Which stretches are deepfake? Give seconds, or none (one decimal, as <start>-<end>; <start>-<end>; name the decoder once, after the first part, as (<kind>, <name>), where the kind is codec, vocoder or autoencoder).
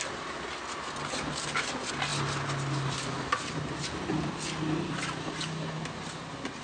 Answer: none